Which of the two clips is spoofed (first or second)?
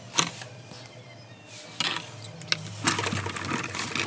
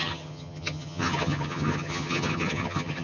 second